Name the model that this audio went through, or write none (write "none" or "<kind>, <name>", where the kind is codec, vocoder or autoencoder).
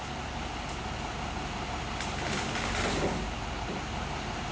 none